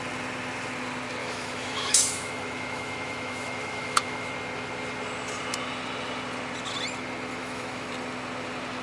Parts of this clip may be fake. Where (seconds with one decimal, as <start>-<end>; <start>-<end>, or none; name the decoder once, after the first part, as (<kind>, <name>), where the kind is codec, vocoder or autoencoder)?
1.2-4.3 (autoencoder, DAC-VAE); 7.4-7.9